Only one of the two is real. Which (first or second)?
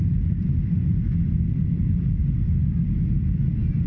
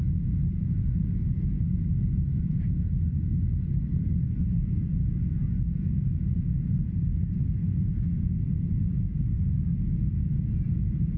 first